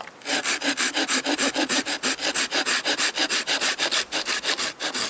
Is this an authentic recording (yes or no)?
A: yes